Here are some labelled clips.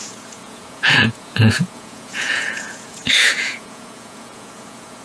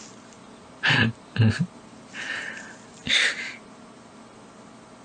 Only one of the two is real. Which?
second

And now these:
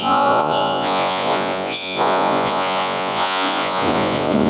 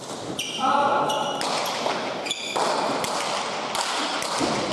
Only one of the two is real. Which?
second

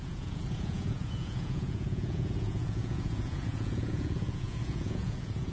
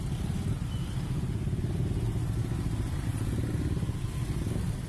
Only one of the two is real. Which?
second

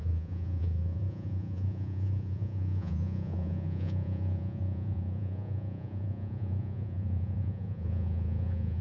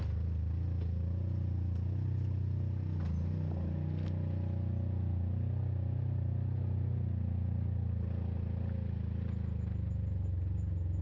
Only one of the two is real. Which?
second